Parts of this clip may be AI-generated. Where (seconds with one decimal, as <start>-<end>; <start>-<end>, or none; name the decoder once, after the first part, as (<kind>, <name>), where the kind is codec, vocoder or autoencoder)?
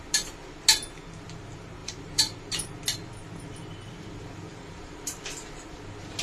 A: 1.8-2.5 (vocoder, BigVGAN v2); 4.5-5.2